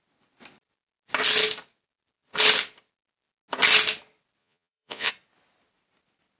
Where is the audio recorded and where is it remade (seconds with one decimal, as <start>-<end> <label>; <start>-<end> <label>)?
0.0-4.4 recorded; 4.4-5.1 remade; 5.1-6.4 recorded

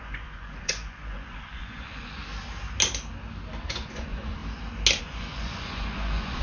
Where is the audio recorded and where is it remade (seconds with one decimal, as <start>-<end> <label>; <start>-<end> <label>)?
0.0-2.2 remade; 2.2-3.6 recorded; 3.6-4.4 remade; 4.4-5.0 recorded; 5.0-6.4 remade

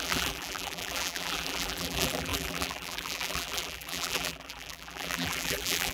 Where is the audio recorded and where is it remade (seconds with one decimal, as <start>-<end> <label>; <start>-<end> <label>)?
0.0-5.9 remade

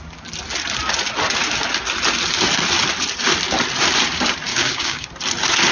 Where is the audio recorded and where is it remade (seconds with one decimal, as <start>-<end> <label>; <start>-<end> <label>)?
0.0-4.5 recorded; 4.5-5.1 remade; 5.1-5.7 recorded